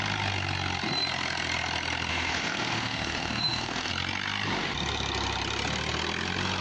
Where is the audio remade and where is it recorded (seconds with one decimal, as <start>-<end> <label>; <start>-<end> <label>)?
0.0-2.1 recorded; 2.1-3.9 remade; 3.9-6.6 recorded